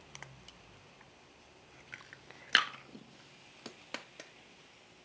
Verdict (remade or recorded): recorded